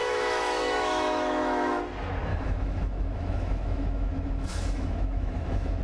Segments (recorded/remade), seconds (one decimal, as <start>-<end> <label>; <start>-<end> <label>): 0.0-1.8 remade; 1.8-2.3 recorded; 2.3-5.8 remade